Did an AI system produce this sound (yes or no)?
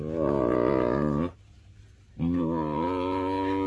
no